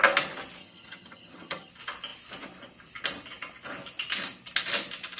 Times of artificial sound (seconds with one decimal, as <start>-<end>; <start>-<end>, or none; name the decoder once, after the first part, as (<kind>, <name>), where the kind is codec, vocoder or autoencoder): 0.6-1.7 (vocoder, HiFi-GAN)